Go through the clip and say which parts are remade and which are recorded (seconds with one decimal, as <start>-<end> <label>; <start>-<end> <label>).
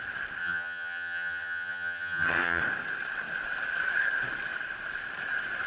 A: 0.0-0.4 recorded; 0.4-2.6 remade; 2.6-5.7 recorded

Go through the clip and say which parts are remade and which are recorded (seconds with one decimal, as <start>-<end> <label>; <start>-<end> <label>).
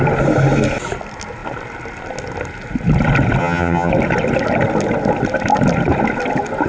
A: 0.0-3.4 recorded; 3.4-3.9 remade; 3.9-6.7 recorded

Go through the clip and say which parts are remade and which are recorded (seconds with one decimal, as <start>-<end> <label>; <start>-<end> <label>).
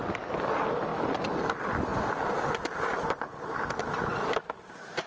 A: 0.0-5.1 recorded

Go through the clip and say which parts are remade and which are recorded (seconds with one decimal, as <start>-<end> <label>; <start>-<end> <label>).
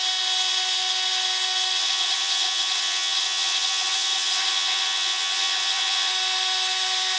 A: 0.0-1.8 recorded; 1.8-6.1 remade; 6.1-7.2 recorded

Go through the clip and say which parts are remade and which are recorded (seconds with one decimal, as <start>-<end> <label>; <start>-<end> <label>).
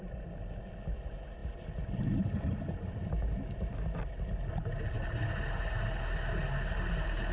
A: 0.0-7.3 recorded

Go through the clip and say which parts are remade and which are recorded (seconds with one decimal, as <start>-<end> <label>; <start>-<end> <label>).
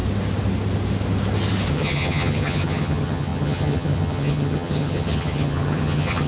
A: 0.0-1.7 recorded; 1.7-6.3 remade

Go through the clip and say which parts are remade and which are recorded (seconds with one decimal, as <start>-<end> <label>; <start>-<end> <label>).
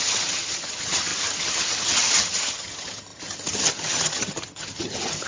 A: 0.0-5.3 remade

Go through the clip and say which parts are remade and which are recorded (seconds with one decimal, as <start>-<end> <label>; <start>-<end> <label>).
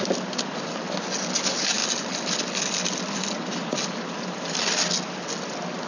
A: 0.0-5.9 recorded